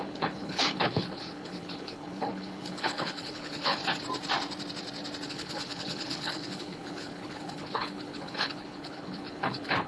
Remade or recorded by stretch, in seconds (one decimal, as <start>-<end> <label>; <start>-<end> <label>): 0.0-3.8 remade; 3.8-5.3 recorded; 5.3-9.9 remade